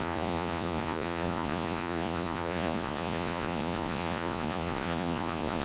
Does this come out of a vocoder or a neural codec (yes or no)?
yes